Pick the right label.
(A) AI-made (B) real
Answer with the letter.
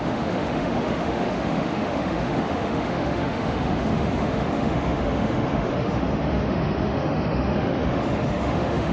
A